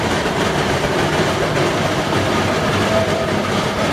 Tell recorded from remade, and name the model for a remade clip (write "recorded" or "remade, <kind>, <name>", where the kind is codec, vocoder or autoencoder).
remade, vocoder, BigVGAN v2